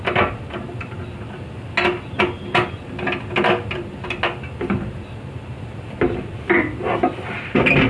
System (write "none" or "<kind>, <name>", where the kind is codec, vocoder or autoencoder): none